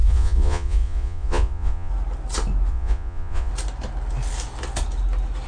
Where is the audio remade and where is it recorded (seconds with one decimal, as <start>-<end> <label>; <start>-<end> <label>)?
0.0-1.9 remade; 1.9-2.7 recorded; 2.7-3.5 remade; 3.5-5.5 recorded